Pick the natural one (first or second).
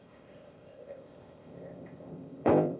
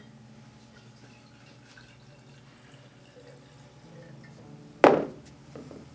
second